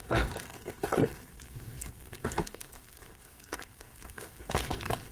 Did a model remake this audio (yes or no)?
yes